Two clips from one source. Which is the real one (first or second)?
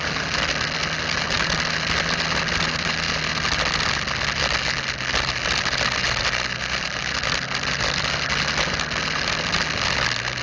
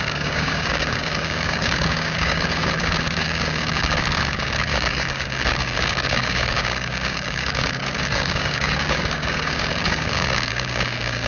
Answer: first